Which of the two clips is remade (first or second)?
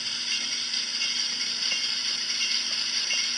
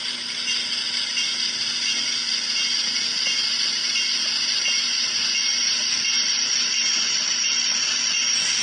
first